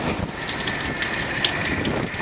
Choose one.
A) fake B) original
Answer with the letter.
B